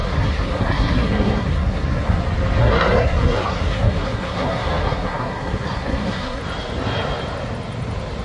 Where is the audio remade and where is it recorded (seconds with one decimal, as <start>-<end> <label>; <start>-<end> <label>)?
0.0-2.2 remade; 2.2-2.6 recorded; 2.6-6.4 remade; 6.4-8.2 recorded